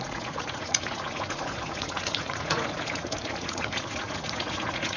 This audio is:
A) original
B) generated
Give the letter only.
B